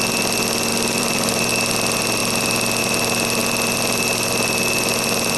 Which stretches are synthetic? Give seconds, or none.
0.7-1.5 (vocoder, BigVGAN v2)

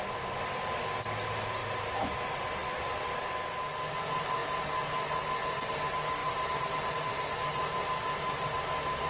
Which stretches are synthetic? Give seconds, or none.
1.6-2.2 (vocoder, BigVGAN v2); 6.2-7.3

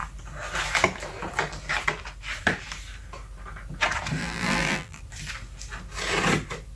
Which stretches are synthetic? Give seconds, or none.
4.2-5.0 (vocoder, BigVGAN v2)

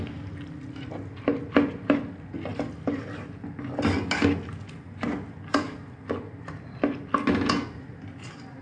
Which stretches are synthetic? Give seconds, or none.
none

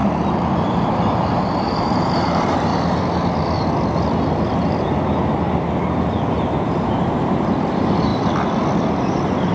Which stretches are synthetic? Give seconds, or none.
0.5-2.7 (vocoder, BigVGAN v2); 6.5-8.1; 8.8-9.5

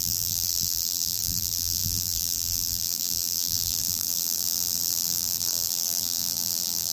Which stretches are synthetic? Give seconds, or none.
0.0-6.9 (vocoder, BigVGAN v2)

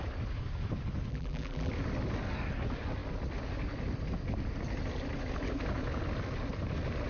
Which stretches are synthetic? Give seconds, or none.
1.1-1.7 (vocoder, BigVGAN v2)